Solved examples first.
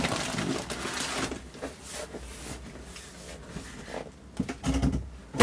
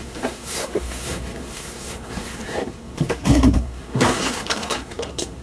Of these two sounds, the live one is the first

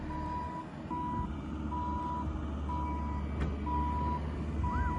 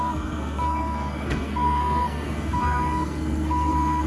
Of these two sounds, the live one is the first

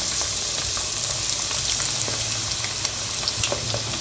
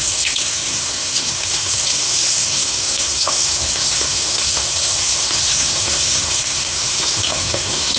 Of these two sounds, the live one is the first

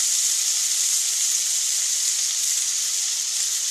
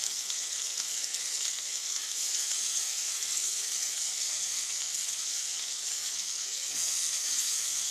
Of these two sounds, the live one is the first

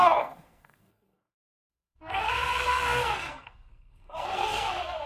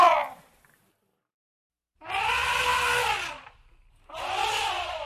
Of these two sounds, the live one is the second